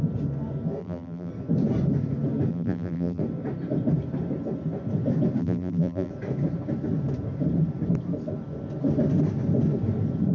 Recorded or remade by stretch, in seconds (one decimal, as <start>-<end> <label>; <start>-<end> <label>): 0.0-0.8 recorded; 0.8-1.3 remade; 1.3-2.5 recorded; 2.5-3.2 remade; 3.2-5.4 recorded; 5.4-6.1 remade; 6.1-10.3 recorded